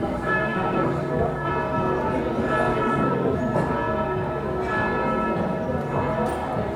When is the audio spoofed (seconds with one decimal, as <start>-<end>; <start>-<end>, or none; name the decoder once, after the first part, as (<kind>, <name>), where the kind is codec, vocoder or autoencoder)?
0.0-1.5 (codec, SNAC); 2.7-3.4